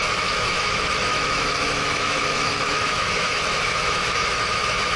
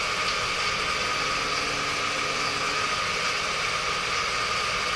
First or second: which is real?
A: second